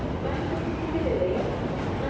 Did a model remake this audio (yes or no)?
no